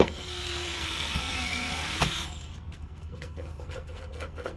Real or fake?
fake